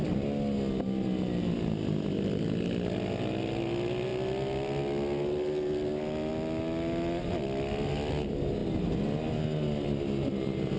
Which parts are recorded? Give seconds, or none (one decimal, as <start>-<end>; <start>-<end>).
0.0-10.8